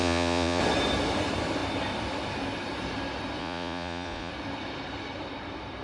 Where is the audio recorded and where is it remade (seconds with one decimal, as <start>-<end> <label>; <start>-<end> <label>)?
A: 0.0-0.6 remade; 0.6-3.4 recorded; 3.4-4.3 remade; 4.3-5.8 recorded